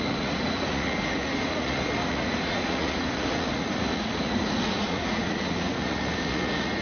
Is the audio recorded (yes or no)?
no